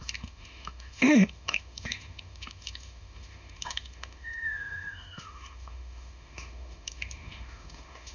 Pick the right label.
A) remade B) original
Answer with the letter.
A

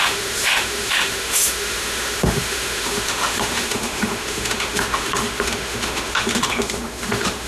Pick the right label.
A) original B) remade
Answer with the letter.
B